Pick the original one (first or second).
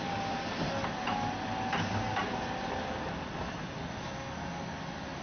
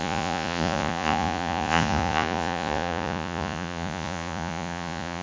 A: first